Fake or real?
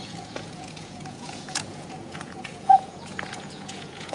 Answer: fake